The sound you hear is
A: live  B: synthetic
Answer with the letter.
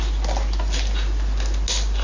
A